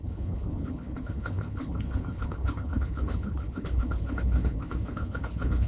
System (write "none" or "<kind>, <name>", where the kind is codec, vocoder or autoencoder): codec, HILCodec